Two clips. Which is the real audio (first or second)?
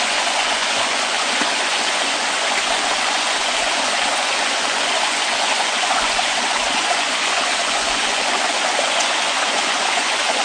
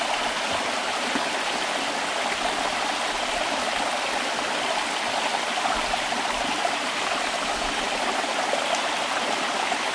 second